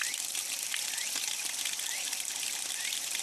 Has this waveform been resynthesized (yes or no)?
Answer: no